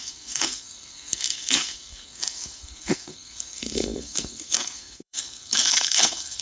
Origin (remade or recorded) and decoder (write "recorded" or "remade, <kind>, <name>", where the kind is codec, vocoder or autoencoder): remade, codec, SNAC